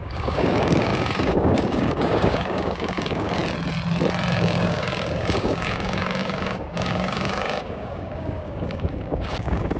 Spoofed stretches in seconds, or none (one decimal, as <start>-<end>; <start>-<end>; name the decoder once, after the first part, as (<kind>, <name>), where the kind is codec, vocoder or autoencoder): 0.0-3.4 (codec, DAC); 4.3-9.8

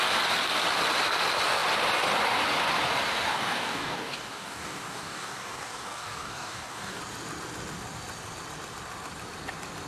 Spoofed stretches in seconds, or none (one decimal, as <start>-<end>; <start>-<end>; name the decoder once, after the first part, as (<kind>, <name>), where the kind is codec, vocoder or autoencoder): 3.3-7.0 (codec, DAC)

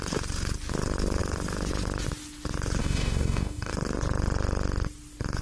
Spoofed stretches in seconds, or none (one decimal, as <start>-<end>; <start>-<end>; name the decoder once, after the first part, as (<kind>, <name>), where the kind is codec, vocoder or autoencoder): 2.8-3.7 (codec, DAC)

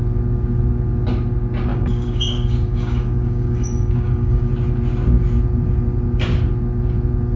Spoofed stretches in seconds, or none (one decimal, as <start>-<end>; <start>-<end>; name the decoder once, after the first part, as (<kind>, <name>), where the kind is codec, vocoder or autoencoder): 1.7-4.5 (codec, DAC)